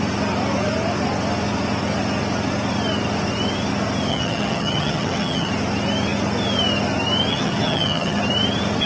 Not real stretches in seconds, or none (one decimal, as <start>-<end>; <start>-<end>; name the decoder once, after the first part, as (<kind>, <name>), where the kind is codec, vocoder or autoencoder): 4.1-5.5 (vocoder, HiFi-GAN); 7.3-8.2